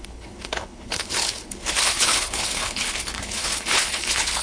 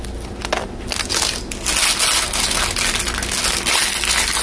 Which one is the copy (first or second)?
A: first